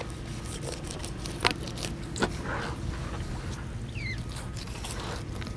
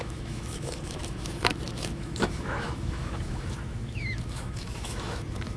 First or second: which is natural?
first